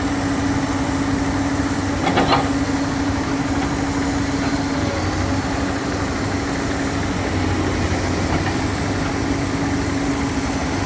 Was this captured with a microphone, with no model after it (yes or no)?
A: yes